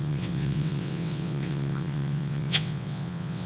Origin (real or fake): fake